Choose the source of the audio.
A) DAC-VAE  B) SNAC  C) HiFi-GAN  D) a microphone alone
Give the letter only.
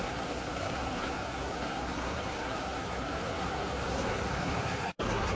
B